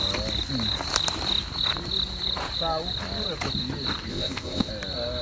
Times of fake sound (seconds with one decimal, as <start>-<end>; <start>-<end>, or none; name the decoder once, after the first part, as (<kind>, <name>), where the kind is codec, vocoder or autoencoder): 4.1-4.7 (codec, ZipCodec)